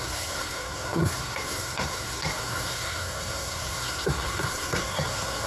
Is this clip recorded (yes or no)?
no